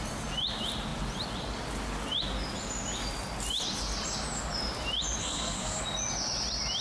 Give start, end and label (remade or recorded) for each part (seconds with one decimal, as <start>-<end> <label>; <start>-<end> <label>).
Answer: 0.0-5.2 recorded; 5.2-5.8 remade; 5.8-6.8 recorded